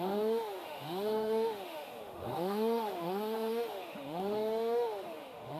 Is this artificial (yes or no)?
yes